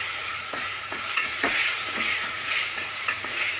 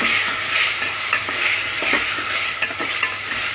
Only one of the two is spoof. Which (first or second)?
first